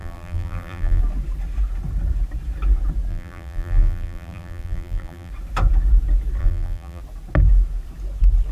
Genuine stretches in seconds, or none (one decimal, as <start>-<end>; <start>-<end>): 1.0-3.1; 5.3-6.4; 7.0-8.5